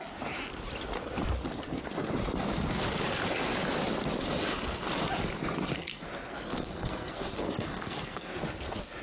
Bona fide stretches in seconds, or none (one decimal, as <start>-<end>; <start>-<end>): 0.0-5.7; 8.4-9.0